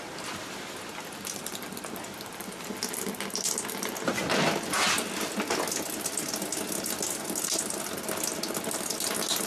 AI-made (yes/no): no